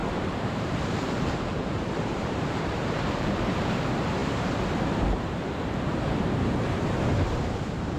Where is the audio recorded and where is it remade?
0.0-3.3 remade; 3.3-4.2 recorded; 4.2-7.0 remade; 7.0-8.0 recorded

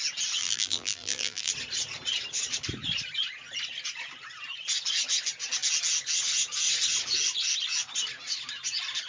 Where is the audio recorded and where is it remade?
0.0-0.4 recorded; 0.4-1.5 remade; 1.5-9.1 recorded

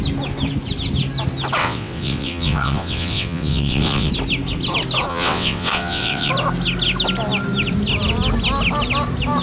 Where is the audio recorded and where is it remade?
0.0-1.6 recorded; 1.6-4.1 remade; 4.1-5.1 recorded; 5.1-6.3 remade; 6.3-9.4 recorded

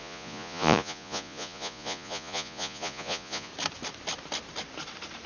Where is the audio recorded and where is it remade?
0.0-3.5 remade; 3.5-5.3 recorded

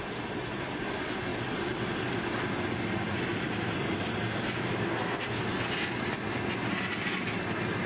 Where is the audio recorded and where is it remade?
0.0-4.9 recorded; 4.9-5.4 remade; 5.4-7.9 recorded

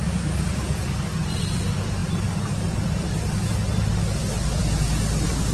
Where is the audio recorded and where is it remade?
0.0-5.5 recorded

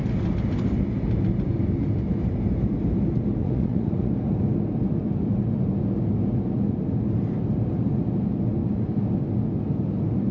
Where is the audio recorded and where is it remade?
0.0-3.4 recorded; 3.4-4.1 remade; 4.1-10.3 recorded

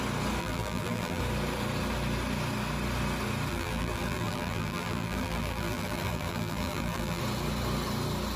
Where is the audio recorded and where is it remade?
0.0-0.4 recorded; 0.4-1.2 remade; 1.2-3.5 recorded; 3.5-7.2 remade; 7.2-8.4 recorded